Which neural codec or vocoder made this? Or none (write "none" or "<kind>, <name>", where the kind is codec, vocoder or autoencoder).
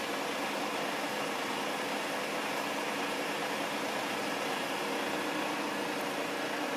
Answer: none